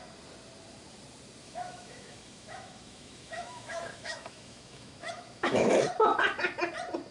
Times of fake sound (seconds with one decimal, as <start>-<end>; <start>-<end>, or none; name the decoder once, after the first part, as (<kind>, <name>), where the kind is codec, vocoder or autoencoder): 1.4-5.7 (autoencoder, DAC-VAE)